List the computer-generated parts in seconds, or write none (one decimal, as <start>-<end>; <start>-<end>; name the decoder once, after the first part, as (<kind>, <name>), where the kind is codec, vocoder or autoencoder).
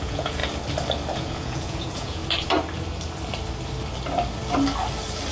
0.0-0.4 (vocoder, Vocos); 1.1-2.2